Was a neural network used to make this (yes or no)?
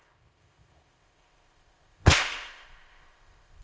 yes